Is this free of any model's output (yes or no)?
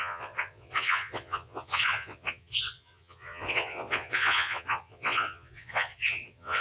no